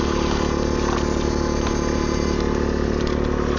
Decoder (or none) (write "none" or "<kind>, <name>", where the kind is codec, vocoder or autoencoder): none